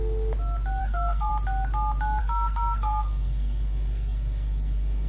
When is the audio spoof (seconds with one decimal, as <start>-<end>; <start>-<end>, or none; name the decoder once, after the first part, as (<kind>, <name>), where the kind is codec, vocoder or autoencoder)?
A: 0.8-1.3 (codec, SNAC); 2.2-5.1